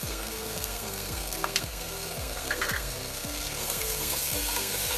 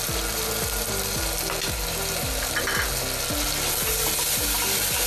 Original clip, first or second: second